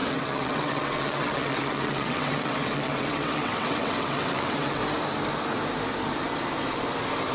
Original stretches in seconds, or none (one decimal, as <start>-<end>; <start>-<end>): 4.8-7.3